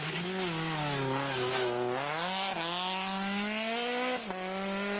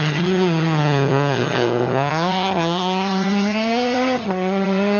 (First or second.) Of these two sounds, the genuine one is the first